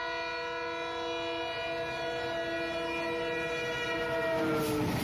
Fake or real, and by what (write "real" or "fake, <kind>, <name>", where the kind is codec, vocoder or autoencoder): real